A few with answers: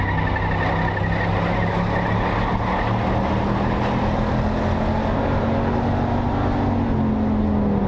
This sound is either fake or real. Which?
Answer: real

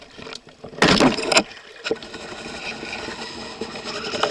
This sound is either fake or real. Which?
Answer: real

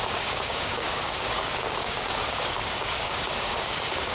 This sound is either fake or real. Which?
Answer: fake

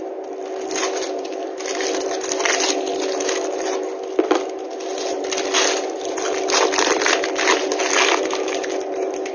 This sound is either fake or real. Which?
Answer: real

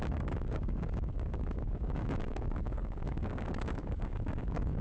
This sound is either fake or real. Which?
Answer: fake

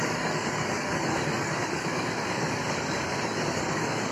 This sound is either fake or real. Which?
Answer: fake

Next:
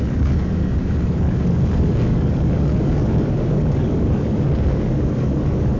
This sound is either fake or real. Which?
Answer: fake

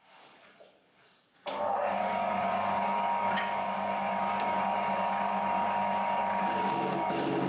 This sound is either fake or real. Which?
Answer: fake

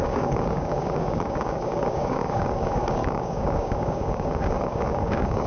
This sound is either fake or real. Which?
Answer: fake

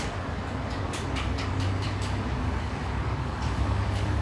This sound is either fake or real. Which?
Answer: fake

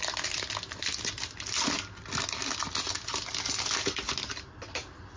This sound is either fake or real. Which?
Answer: real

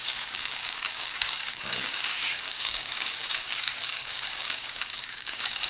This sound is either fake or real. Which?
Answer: fake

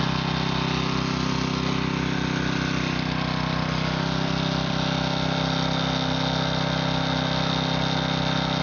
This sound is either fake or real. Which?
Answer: real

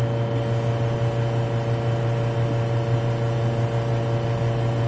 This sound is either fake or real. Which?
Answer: real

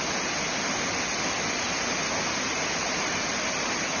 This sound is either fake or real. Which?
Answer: real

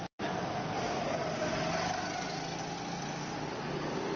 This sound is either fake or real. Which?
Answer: real